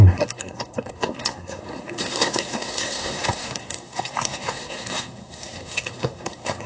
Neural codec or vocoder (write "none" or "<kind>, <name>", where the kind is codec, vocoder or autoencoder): codec, SNAC